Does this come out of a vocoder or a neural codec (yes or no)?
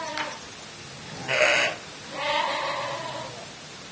no